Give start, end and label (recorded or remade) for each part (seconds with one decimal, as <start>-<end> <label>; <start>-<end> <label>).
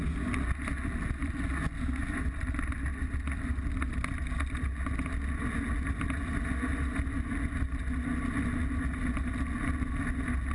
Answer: 0.0-10.5 recorded